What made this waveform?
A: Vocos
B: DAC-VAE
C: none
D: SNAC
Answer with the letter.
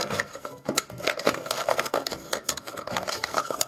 D